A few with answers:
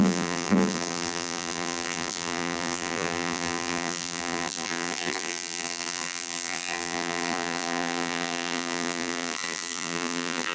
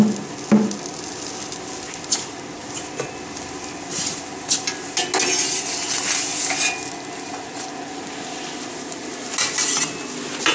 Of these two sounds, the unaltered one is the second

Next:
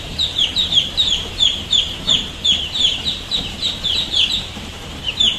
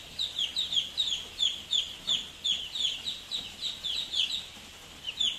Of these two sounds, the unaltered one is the second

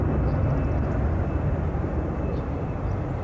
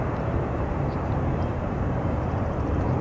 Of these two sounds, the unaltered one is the first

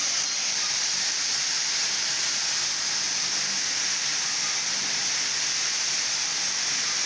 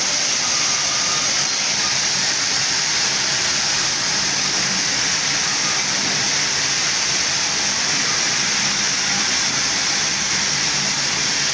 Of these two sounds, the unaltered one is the first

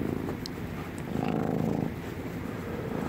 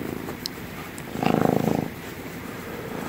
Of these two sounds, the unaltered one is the first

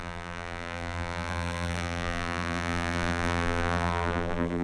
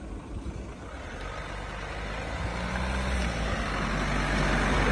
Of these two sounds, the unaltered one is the second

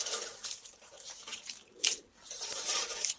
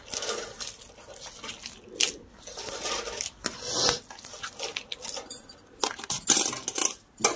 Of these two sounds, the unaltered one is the second